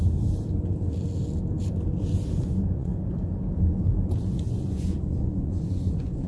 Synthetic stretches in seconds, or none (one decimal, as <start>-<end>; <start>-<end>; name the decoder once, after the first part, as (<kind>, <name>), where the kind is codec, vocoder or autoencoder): 2.4-2.9 (vocoder, Vocos); 4.2-6.3